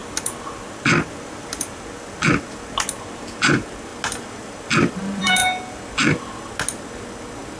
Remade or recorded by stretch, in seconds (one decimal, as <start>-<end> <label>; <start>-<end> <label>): 0.0-3.1 recorded; 3.1-3.9 remade; 3.9-4.9 recorded; 4.9-5.4 remade; 5.4-7.6 recorded